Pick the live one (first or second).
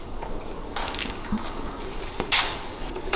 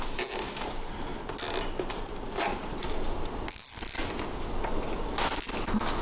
second